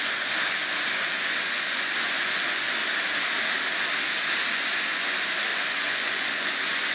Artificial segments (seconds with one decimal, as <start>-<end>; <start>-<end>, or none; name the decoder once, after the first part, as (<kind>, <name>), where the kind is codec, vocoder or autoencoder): 0.0-2.8 (vocoder, Vocos); 4.5-6.9